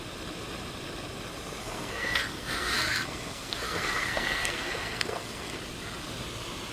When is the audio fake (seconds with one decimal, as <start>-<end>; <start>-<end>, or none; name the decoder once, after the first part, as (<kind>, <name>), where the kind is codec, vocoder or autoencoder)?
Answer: 1.6-5.6 (codec, SNAC)